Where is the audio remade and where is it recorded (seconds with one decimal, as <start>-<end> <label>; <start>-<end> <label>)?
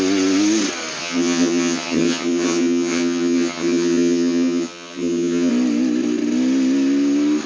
0.0-1.0 recorded; 1.0-5.5 remade; 5.5-7.5 recorded